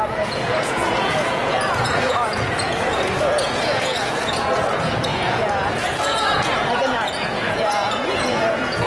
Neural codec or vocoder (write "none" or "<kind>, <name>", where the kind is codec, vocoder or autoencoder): vocoder, Vocos